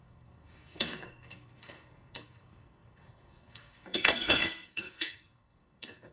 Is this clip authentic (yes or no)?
no